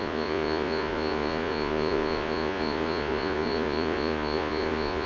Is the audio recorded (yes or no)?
no